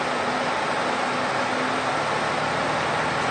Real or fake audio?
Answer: real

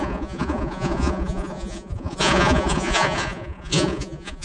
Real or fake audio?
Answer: fake